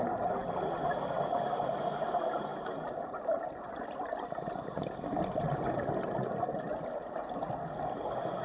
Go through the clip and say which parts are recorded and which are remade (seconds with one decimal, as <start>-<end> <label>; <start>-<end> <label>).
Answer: 0.0-8.4 recorded